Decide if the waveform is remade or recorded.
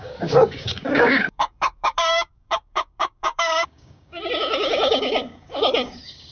remade